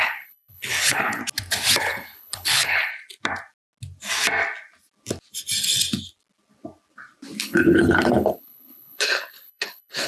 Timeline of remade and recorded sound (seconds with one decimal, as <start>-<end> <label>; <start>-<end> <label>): 0.0-1.2 remade; 1.2-1.8 recorded; 1.8-2.9 remade; 2.9-7.4 recorded; 7.4-10.1 remade